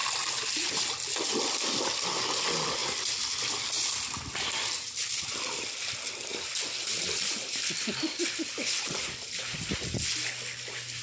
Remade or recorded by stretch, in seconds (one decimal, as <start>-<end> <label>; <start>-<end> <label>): 0.0-11.0 recorded